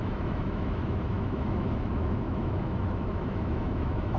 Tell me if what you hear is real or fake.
fake